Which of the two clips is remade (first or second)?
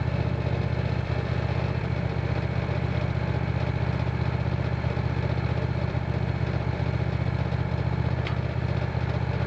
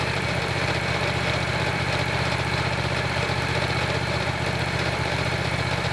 second